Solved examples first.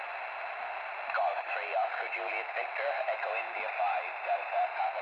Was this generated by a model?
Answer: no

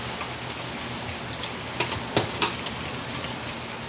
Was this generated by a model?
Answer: no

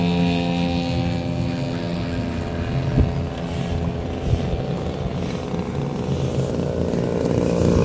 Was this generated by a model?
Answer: no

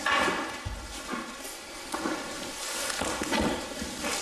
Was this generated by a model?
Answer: no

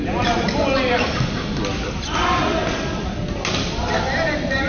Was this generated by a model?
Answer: no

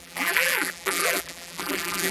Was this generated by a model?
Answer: yes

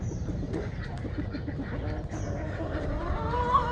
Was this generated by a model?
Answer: yes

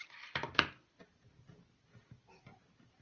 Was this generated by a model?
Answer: no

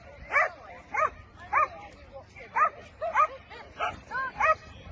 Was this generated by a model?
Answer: yes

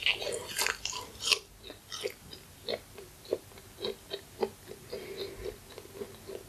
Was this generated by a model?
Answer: no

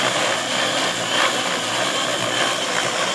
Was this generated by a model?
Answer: yes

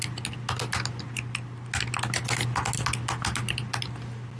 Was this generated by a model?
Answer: no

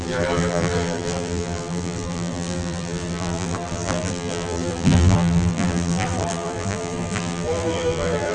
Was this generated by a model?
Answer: yes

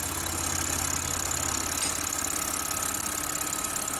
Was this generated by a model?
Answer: no